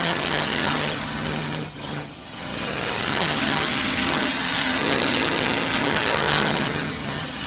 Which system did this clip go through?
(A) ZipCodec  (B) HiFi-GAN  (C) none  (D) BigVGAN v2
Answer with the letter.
B